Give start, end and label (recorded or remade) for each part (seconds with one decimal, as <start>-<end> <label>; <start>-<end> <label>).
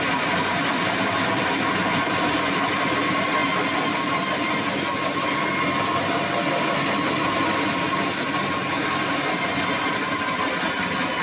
0.0-11.2 remade